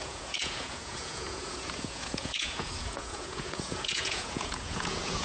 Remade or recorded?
remade